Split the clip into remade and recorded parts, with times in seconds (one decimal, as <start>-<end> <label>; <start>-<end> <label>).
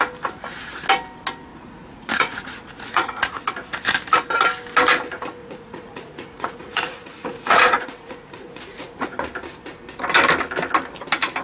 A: 0.0-1.5 recorded; 1.5-3.4 remade; 3.4-5.4 recorded; 5.4-9.3 remade; 9.3-11.4 recorded